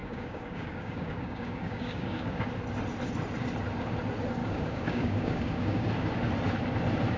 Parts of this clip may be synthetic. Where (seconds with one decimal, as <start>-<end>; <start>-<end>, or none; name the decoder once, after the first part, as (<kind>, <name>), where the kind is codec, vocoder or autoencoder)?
0.0-2.5 (codec, DAC); 4.4-5.9